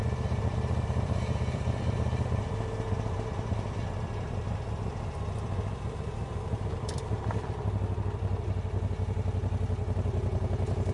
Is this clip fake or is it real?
fake